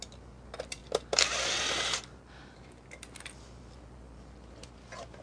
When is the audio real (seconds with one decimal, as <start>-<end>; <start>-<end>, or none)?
0.0-5.2